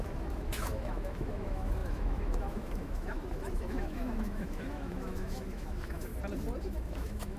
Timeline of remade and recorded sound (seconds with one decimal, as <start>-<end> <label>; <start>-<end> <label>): 0.0-6.1 remade; 6.1-6.6 recorded; 6.6-7.4 remade